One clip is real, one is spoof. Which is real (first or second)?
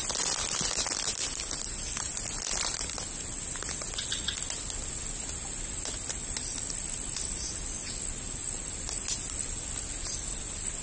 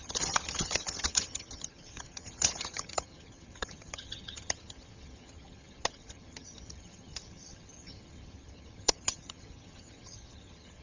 first